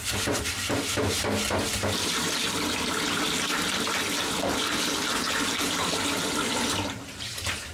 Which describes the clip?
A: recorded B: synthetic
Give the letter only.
A